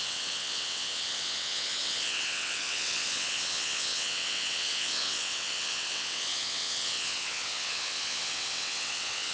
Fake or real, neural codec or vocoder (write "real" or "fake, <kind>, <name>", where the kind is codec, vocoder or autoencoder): fake, vocoder, WaveNeXt